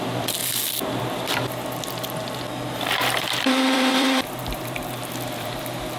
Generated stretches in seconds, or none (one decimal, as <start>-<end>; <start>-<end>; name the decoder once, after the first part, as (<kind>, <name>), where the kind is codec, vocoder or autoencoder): 0.0-0.4 (vocoder, BigVGAN v2); 1.0-6.0